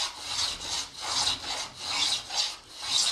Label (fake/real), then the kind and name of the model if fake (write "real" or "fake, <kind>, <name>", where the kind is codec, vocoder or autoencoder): real